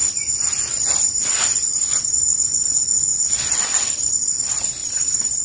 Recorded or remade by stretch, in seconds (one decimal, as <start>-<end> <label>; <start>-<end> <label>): 0.0-4.8 recorded; 4.8-5.4 remade